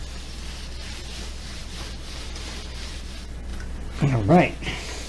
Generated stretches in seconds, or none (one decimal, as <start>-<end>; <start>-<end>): none